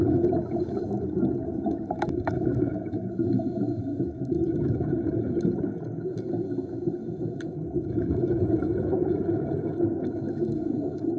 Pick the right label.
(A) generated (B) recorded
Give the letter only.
A